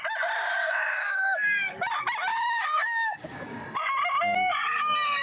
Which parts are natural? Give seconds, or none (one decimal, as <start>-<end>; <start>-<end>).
0.0-0.6; 1.9-2.3; 3.6-5.2